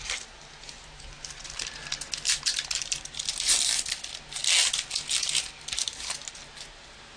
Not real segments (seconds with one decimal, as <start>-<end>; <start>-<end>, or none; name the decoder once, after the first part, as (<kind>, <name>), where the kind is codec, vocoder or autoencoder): none